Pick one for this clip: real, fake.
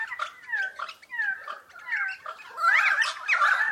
real